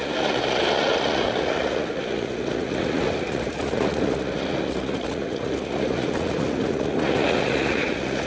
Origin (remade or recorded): remade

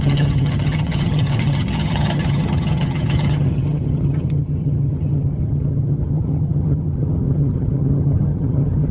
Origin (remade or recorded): remade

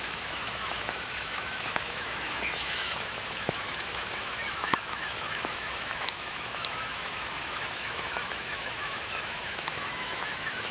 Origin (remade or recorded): remade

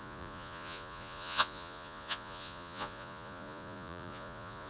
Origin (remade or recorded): remade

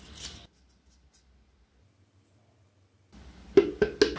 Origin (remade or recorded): recorded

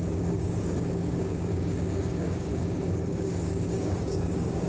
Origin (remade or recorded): remade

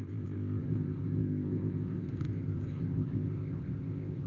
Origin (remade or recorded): remade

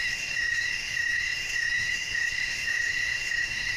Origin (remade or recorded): remade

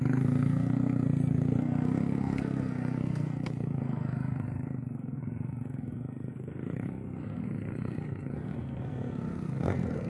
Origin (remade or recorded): remade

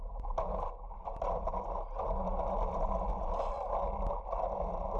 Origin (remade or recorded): recorded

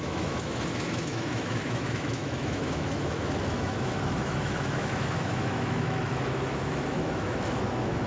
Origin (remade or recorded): remade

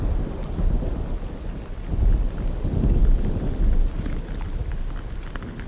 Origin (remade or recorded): recorded